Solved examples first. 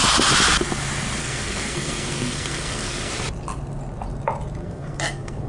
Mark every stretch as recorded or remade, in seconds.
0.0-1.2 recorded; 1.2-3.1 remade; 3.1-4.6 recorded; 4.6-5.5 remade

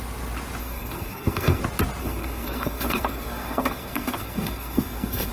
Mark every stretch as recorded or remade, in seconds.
0.0-0.6 recorded; 0.6-1.6 remade; 1.6-2.0 recorded; 2.0-5.3 remade